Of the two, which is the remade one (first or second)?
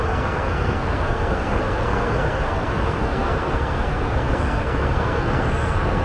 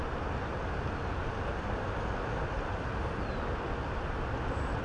first